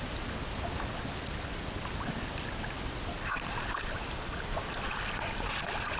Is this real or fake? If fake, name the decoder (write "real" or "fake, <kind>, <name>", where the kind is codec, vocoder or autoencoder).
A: real